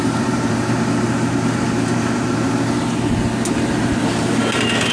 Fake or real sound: fake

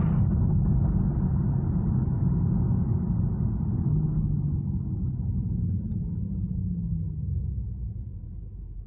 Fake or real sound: real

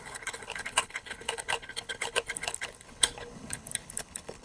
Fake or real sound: fake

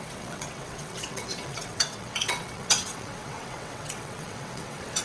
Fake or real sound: fake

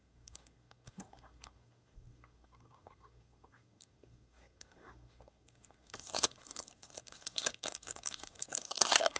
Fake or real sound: fake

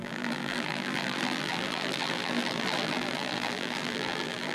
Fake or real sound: fake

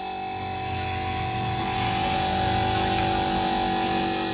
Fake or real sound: real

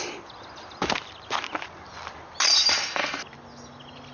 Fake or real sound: real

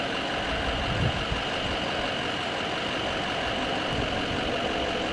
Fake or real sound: real